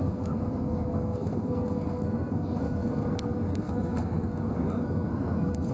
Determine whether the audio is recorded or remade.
remade